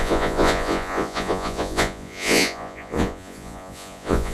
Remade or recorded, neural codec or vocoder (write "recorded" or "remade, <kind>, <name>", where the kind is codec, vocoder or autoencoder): remade, vocoder, Vocos